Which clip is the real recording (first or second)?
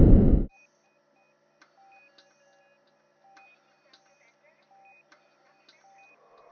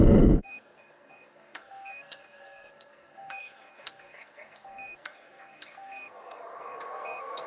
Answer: first